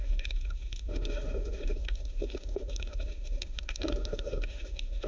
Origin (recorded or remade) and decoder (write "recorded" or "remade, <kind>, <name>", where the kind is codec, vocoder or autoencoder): remade, autoencoder, DAC-VAE